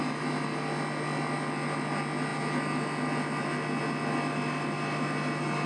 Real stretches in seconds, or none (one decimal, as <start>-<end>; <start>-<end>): 0.0-5.7